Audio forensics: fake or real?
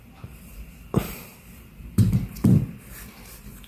fake